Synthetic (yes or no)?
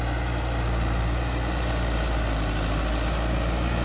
no